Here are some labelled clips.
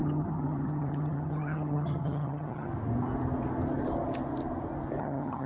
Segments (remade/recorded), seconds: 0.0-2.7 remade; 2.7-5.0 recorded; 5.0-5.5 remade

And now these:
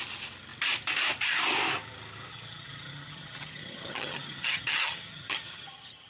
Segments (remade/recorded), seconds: 0.0-2.3 recorded; 2.3-6.1 remade